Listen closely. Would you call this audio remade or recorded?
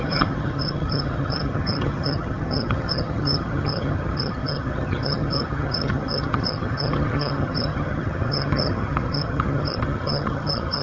remade